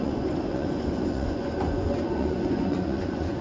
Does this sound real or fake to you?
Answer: fake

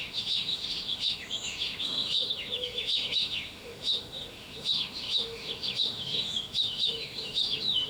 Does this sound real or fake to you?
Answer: fake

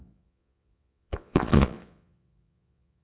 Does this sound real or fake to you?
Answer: fake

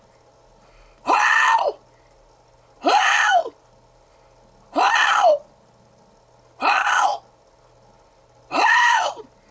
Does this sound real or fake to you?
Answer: real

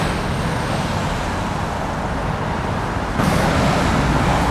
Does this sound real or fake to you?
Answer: real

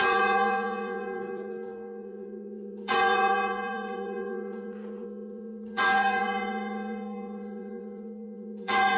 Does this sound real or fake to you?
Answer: fake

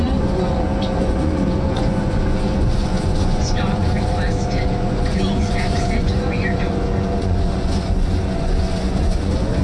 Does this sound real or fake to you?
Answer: fake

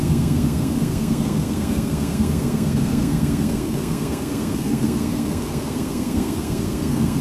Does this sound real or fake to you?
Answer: fake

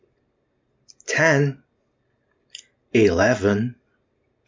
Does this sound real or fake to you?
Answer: real